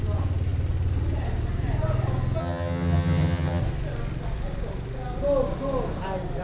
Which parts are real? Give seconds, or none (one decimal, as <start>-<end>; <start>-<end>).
0.0-2.4; 3.6-6.4